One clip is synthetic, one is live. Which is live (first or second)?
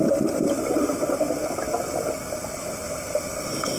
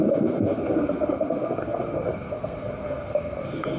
first